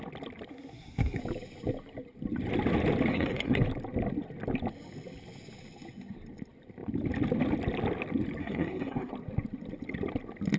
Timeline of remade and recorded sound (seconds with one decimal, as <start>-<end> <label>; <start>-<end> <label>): 0.0-0.5 recorded; 0.5-1.2 remade; 1.2-3.1 recorded; 3.1-3.6 remade; 3.6-8.4 recorded; 8.4-9.1 remade; 9.1-10.6 recorded